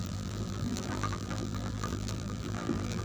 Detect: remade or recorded remade